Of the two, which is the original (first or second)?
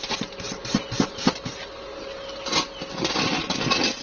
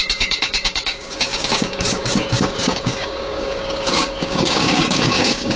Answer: first